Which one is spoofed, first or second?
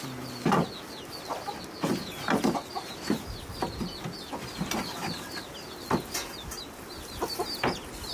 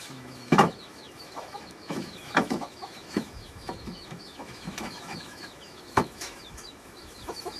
second